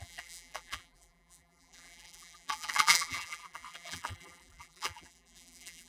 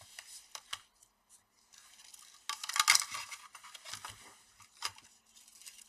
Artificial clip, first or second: first